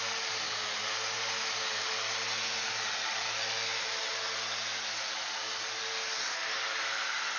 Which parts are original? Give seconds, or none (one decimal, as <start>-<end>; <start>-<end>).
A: 0.0-7.4